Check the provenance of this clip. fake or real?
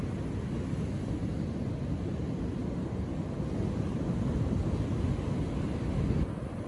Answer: real